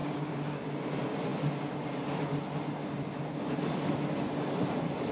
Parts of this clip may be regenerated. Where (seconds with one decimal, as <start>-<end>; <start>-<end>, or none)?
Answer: 0.0-0.7